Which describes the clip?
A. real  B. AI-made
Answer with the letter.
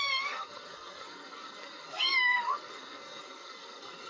B